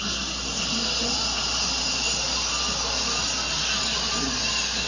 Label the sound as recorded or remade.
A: recorded